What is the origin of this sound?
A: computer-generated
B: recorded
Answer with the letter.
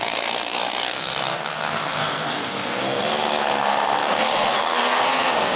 A